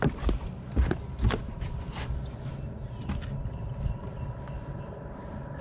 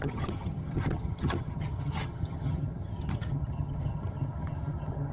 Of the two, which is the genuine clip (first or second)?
first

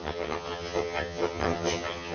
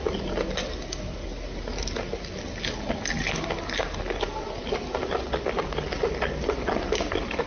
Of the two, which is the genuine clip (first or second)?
second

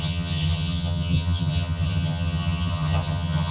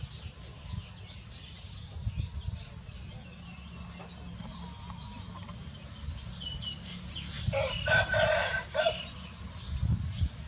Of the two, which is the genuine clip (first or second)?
second